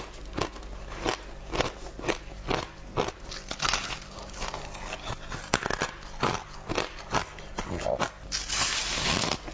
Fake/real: real